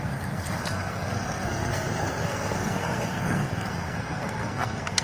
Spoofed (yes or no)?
yes